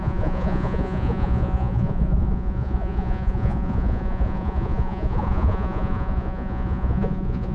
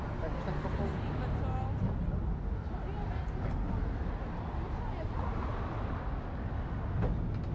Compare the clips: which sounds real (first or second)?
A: second